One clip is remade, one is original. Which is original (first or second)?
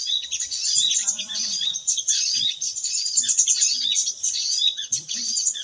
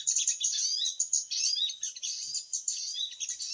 second